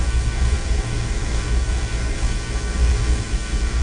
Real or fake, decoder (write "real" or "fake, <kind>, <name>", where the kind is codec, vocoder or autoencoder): fake, codec, SNAC